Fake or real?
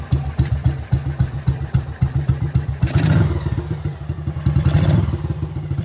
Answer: fake